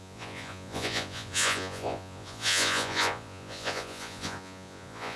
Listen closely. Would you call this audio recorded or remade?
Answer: remade